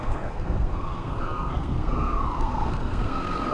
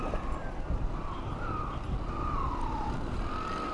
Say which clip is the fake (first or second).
first